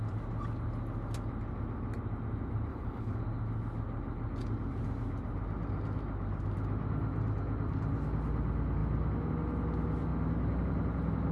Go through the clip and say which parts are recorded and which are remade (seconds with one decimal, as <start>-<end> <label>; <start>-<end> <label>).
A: 0.0-2.7 recorded; 2.7-3.2 remade; 3.2-11.3 recorded